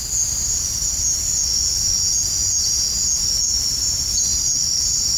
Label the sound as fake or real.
real